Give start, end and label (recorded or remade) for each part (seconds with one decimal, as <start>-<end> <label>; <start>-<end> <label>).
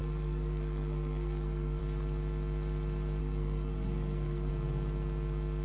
0.0-1.8 remade; 1.8-3.2 recorded; 3.2-4.5 remade; 4.5-5.6 recorded